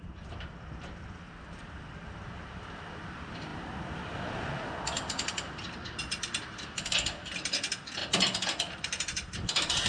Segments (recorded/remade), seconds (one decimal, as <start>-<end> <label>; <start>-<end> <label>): 0.0-9.9 recorded